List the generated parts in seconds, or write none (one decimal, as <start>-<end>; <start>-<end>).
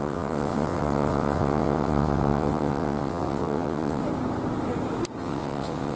0.0-4.0; 5.2-6.0